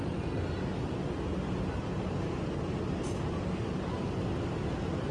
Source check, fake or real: real